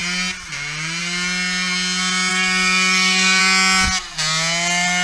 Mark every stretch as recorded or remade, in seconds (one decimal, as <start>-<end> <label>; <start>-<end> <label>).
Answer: 0.0-2.3 recorded; 2.3-3.4 remade; 3.4-5.0 recorded